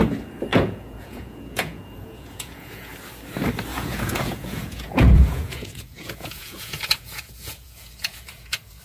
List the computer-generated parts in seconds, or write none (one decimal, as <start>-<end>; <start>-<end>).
0.5-2.9; 3.7-8.8